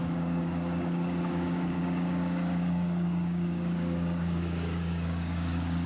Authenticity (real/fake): fake